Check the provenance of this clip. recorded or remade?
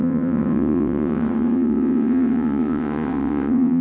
remade